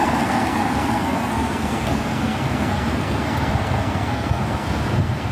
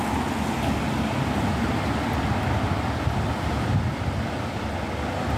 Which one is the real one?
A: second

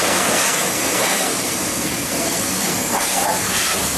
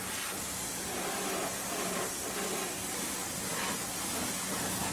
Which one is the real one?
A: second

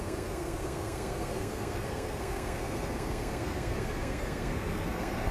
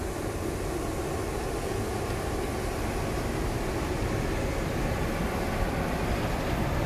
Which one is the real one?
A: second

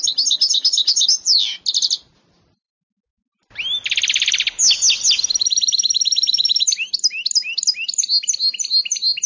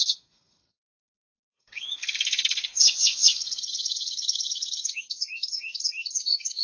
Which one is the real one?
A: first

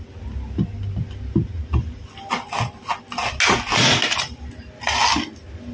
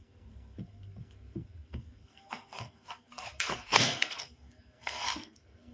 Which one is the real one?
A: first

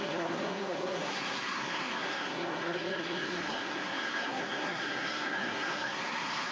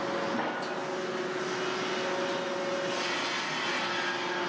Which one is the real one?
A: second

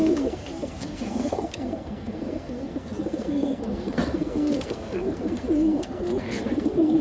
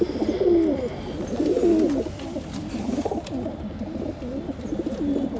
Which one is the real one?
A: second